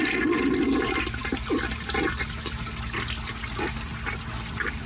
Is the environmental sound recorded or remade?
recorded